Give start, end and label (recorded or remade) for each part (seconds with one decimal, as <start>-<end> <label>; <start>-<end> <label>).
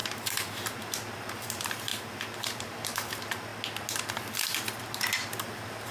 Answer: 0.0-3.5 remade; 3.5-4.8 recorded; 4.8-5.9 remade